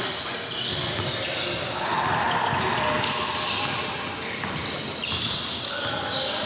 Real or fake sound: real